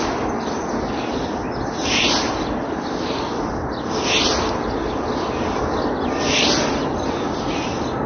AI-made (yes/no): no